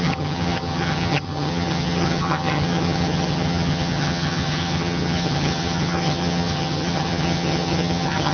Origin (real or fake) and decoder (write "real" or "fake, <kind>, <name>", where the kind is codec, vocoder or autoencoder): fake, vocoder, HiFi-GAN